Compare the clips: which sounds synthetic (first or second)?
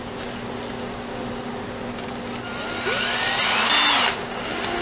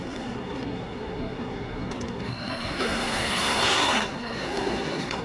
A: second